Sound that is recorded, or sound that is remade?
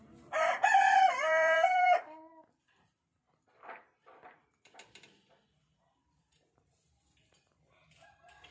remade